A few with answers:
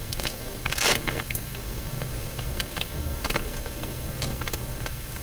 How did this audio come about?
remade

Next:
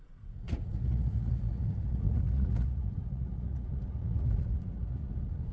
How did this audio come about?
remade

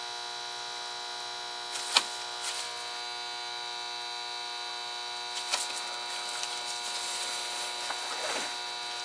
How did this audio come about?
recorded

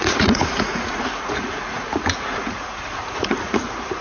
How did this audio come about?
remade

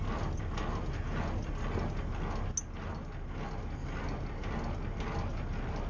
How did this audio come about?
recorded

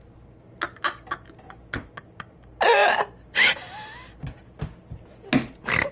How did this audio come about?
recorded